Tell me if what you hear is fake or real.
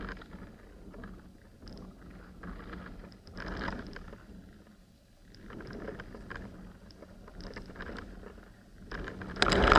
real